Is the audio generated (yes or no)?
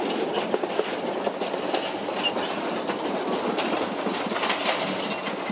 no